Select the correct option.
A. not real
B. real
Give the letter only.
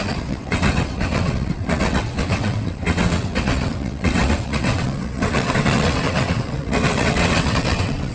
A